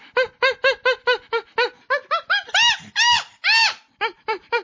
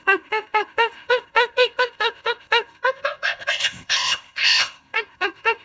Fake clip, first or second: second